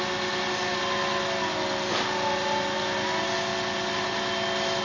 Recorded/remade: recorded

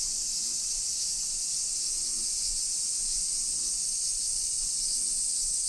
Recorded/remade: remade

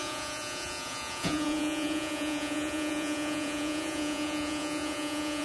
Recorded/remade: remade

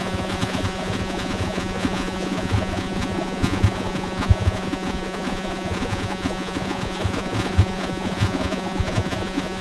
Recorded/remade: remade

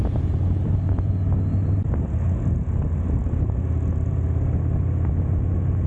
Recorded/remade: recorded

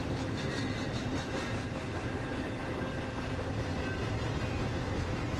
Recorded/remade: recorded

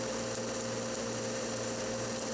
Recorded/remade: recorded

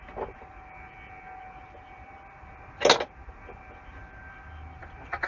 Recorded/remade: recorded